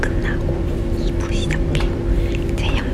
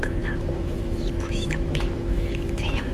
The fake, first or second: second